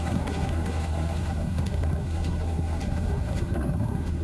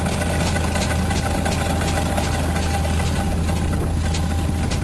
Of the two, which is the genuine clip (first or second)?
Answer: second